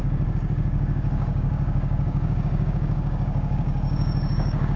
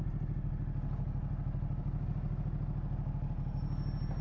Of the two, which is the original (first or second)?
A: second